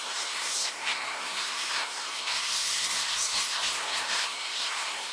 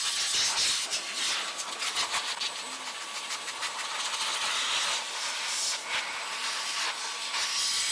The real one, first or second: second